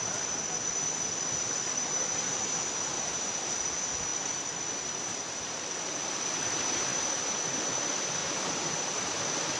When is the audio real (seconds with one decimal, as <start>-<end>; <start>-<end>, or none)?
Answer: 0.0-2.9; 3.5-8.2; 9.2-9.6